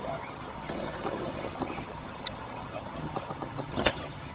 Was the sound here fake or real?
fake